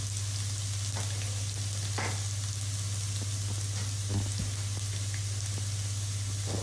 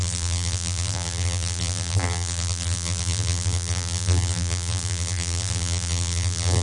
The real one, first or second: first